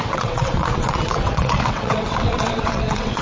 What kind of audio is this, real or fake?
fake